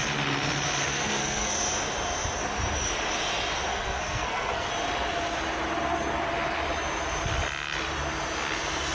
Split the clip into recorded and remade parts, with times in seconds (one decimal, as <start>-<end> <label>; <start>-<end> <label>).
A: 0.0-0.9 recorded; 0.9-1.5 remade; 1.5-3.7 recorded; 3.7-4.7 remade; 4.7-8.9 recorded